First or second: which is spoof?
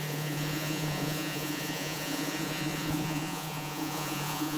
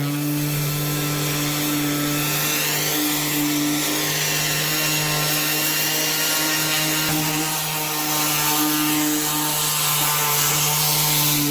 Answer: first